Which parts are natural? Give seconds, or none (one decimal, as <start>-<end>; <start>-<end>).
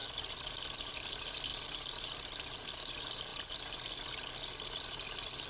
0.0-5.5